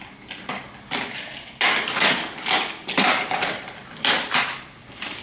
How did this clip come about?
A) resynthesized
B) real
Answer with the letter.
B